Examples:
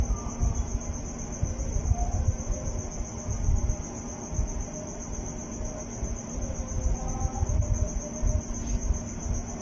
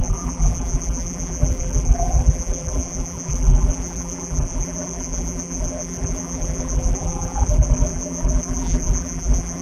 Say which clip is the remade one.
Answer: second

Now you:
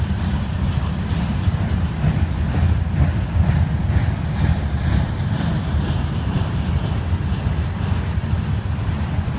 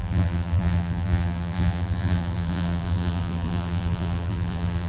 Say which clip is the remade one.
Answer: second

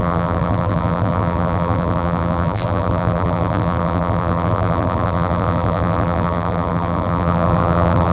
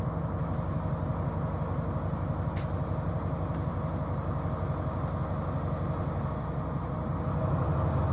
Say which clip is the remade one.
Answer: first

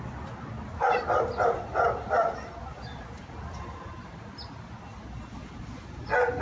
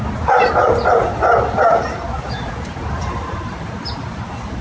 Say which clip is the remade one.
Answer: second